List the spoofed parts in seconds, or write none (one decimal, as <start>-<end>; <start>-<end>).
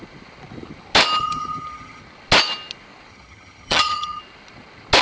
1.2-2.0; 3.1-4.2